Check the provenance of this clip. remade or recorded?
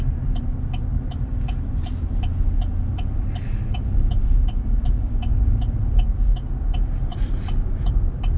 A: recorded